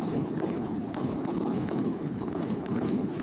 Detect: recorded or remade remade